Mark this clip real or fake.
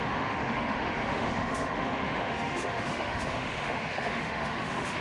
fake